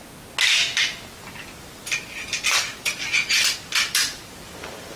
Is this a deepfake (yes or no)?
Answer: no